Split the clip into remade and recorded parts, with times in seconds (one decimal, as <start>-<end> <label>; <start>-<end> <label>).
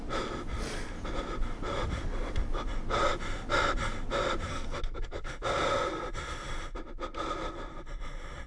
0.0-4.5 recorded; 4.5-5.3 remade; 5.3-8.5 recorded